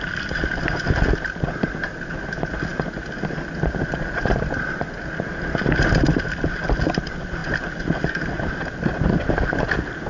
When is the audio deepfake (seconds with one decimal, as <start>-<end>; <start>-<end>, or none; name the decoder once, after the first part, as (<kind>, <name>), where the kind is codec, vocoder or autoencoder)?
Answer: none